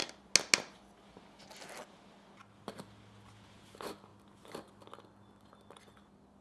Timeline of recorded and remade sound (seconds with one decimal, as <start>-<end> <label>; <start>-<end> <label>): 0.0-6.4 recorded